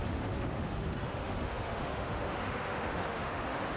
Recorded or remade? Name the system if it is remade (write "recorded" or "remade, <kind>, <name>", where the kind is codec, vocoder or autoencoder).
remade, autoencoder, DAC-VAE